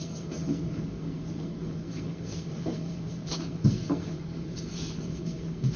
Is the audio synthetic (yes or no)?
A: yes